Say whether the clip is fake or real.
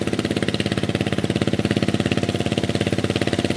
real